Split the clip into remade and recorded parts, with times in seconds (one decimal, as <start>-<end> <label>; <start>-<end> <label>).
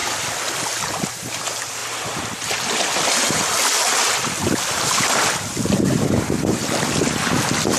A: 0.0-7.8 recorded